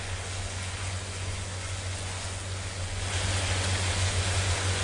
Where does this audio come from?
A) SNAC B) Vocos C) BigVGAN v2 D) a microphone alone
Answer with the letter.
B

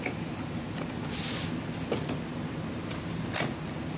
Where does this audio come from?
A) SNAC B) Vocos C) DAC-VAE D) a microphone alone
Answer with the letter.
D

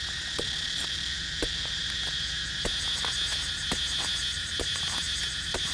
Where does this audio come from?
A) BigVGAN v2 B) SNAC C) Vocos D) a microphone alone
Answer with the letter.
D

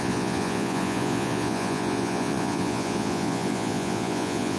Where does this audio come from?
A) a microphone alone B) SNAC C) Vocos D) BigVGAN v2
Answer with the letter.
C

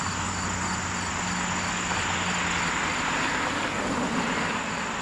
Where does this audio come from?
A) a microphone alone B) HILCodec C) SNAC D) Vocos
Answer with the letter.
A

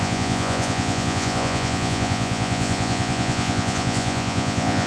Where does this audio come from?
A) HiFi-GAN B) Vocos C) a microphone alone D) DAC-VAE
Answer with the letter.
B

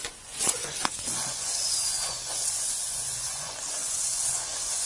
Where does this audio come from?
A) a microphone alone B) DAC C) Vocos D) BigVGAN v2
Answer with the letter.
C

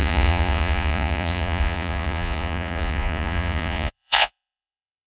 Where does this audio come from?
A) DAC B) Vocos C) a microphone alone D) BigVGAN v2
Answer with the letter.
B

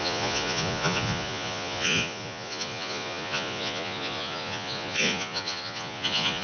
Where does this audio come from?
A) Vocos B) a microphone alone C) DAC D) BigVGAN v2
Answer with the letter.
A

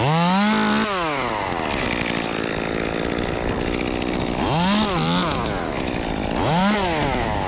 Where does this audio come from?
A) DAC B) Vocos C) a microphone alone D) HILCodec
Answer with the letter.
C